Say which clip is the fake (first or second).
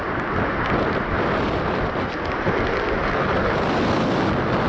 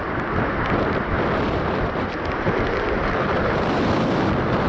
second